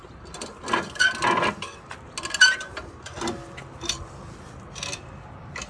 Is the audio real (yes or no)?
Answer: yes